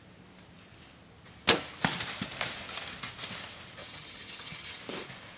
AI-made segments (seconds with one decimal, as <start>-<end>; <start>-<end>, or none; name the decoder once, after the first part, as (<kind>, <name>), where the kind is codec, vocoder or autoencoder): 3.8-4.8 (vocoder, HiFi-GAN)